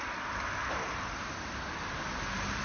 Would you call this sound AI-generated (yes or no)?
no